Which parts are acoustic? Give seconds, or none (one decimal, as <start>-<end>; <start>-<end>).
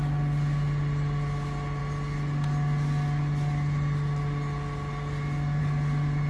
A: 0.0-6.3